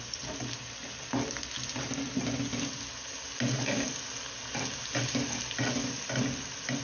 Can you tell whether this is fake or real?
real